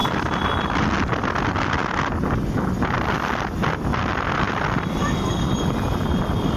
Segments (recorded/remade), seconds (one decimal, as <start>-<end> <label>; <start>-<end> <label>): 0.0-6.6 recorded

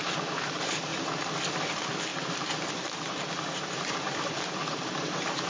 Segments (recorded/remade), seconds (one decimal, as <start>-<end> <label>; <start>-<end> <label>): 0.0-0.9 remade; 0.9-1.7 recorded; 1.7-2.1 remade; 2.1-2.8 recorded; 2.8-5.5 remade

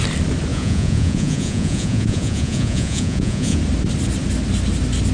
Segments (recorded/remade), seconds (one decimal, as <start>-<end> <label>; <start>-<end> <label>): 0.0-0.5 recorded; 0.5-3.6 remade; 3.6-5.1 recorded

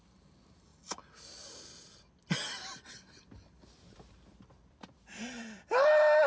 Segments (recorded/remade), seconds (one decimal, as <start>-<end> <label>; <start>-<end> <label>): 0.0-6.3 recorded

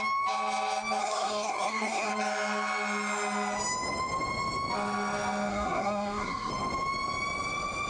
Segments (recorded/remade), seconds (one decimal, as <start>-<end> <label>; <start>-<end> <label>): 0.0-1.0 recorded; 1.0-2.1 remade; 2.1-5.5 recorded; 5.5-6.5 remade; 6.5-7.9 recorded

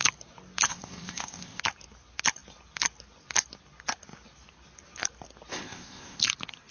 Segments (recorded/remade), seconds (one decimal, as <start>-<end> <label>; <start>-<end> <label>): 0.0-0.7 recorded; 0.7-1.6 remade; 1.6-5.5 recorded; 5.5-6.2 remade; 6.2-6.7 recorded

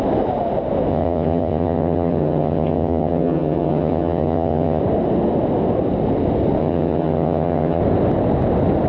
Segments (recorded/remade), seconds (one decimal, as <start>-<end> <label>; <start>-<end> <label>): 0.0-0.9 recorded; 0.9-4.8 remade; 4.8-6.6 recorded; 6.6-7.8 remade; 7.8-8.9 recorded